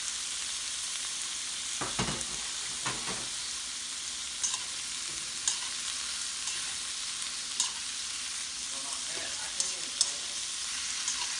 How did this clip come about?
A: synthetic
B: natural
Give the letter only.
B